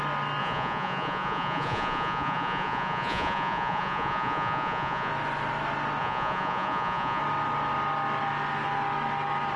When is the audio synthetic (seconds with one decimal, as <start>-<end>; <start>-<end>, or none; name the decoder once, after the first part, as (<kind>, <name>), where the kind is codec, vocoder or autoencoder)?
0.4-5.1 (vocoder, Vocos); 6.0-7.2